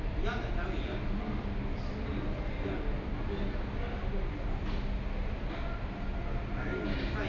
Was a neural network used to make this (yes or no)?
no